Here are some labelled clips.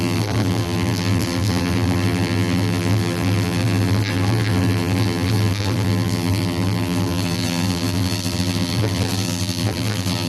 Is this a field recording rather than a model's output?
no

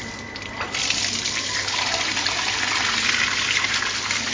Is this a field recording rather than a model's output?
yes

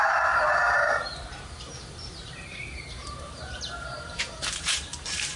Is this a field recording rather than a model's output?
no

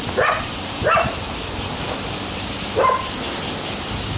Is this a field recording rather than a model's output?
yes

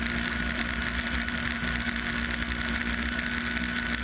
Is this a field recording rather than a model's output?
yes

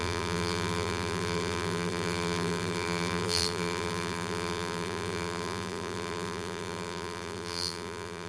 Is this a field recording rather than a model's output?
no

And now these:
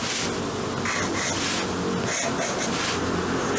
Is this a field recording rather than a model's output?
yes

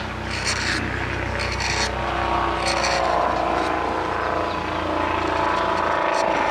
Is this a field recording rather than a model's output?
yes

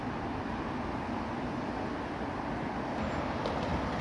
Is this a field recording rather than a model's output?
yes